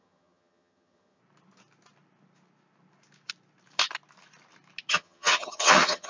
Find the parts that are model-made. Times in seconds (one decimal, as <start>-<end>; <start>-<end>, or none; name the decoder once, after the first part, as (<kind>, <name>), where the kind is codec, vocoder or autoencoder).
0.0-1.2 (vocoder, HiFi-GAN); 4.9-6.1